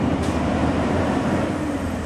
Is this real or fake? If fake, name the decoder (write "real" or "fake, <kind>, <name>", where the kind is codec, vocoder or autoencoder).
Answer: fake, vocoder, BigVGAN v2